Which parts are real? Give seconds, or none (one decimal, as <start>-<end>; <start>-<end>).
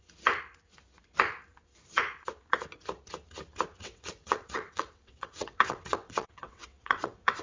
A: 0.0-3.8